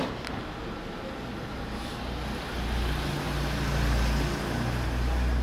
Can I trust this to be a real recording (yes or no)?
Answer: yes